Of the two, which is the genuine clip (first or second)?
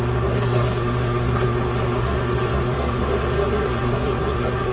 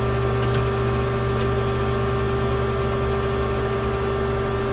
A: second